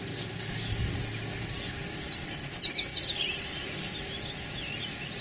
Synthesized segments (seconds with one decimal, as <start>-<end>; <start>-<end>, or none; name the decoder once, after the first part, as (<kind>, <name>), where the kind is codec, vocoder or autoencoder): 2.9-3.7 (vocoder, BigVGAN v2)